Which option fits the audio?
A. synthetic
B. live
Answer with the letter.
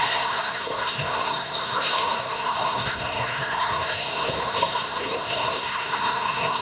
A